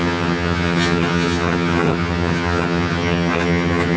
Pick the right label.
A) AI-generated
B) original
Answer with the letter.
A